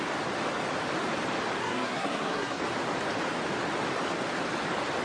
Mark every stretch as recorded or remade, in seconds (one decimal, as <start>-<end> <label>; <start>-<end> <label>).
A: 0.0-1.6 recorded; 1.6-2.6 remade; 2.6-5.0 recorded